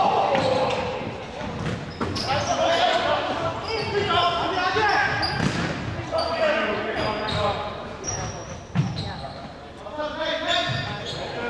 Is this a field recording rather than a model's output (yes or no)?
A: yes